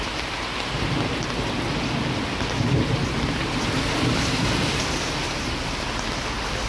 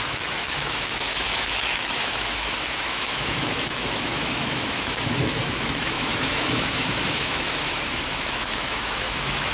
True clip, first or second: first